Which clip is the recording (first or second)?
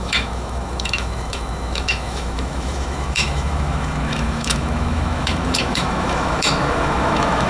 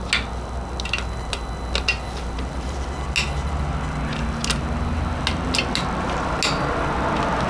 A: second